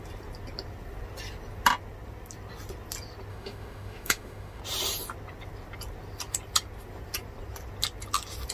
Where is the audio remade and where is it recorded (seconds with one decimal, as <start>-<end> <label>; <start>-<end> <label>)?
0.0-3.3 recorded; 3.3-4.6 remade; 4.6-8.5 recorded